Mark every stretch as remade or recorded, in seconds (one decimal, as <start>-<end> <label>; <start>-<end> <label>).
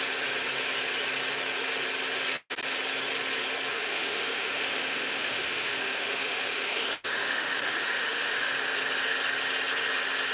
0.0-3.7 recorded; 3.7-8.5 remade; 8.5-10.3 recorded